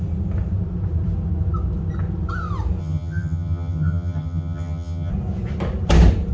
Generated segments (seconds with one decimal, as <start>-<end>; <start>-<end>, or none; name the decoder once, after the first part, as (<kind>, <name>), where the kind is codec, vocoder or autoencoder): 2.8-5.1 (vocoder, HiFi-GAN)